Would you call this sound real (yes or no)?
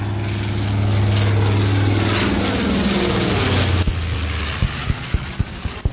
yes